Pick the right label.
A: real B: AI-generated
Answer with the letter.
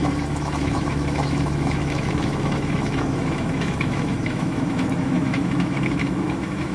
B